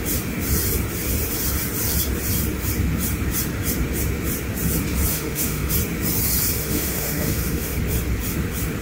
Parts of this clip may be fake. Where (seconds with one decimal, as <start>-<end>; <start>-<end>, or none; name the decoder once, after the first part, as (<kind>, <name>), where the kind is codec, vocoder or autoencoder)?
5.1-5.7 (autoencoder, DAC-VAE); 6.6-7.8